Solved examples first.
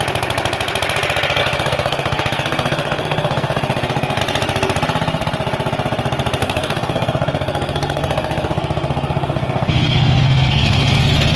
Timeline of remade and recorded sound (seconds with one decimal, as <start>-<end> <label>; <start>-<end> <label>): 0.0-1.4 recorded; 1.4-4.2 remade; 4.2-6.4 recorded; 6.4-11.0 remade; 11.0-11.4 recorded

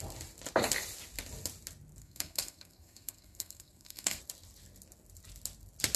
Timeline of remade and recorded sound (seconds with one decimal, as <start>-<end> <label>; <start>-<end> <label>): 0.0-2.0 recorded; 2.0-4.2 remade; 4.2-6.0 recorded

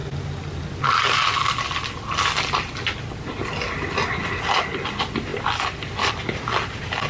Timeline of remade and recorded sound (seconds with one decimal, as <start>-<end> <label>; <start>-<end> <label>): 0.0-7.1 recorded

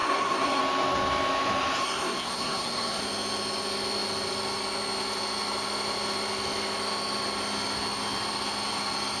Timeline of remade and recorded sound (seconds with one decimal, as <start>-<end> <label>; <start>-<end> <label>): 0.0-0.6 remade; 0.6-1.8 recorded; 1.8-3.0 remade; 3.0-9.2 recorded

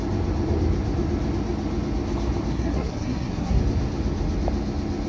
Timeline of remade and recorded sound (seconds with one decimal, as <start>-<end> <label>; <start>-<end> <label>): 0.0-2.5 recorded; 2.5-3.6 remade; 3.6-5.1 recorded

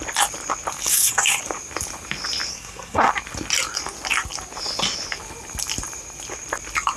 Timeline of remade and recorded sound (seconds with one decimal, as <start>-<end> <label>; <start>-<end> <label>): 0.0-0.9 recorded; 0.9-1.4 remade; 1.4-2.5 recorded; 2.5-3.1 remade; 3.1-7.0 recorded

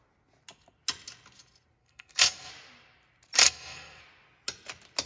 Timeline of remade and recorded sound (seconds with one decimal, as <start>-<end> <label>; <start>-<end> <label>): 0.0-1.8 recorded; 1.8-2.5 remade; 2.5-3.4 recorded; 3.4-4.0 remade; 4.0-5.1 recorded

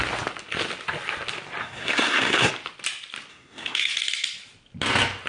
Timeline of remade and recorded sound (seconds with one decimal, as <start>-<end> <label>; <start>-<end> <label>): 0.0-1.6 recorded; 1.6-2.5 remade; 2.5-3.3 recorded; 3.3-3.9 remade; 3.9-5.3 recorded